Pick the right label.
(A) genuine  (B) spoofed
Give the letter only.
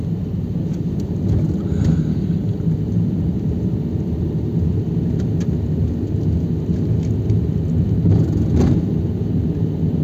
A